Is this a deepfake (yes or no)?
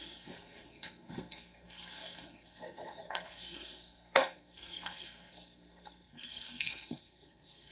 yes